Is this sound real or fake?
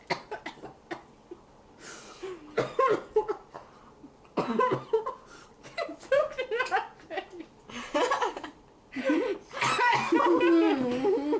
real